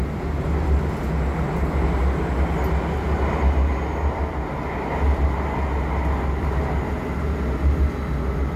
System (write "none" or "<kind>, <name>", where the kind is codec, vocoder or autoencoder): none